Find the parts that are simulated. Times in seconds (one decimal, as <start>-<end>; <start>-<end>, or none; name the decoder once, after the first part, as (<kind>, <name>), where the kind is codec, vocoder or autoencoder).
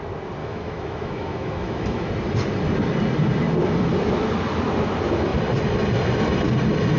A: 0.4-2.1 (autoencoder, DAC-VAE)